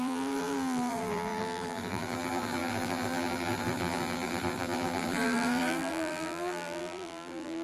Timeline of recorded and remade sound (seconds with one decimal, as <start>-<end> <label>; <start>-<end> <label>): 0.0-7.6 remade